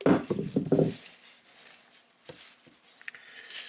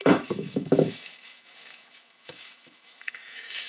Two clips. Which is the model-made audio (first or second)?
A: second